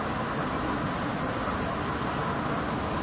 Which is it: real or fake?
real